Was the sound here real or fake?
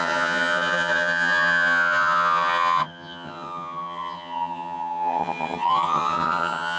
fake